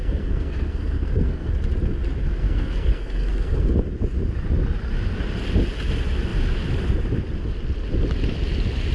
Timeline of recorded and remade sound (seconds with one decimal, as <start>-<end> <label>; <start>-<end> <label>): 0.0-1.5 remade; 1.5-2.4 recorded; 2.4-3.7 remade; 3.7-8.9 recorded